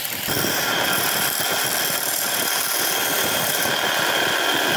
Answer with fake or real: real